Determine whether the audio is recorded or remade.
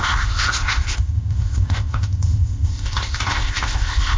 remade